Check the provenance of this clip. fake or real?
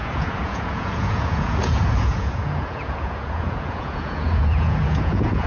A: fake